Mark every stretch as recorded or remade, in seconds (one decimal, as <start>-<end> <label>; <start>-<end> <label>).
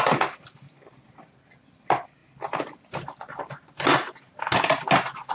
0.0-2.2 remade; 2.2-5.3 recorded